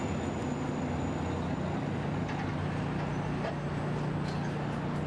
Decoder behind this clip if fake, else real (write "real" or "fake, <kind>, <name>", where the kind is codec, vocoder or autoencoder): real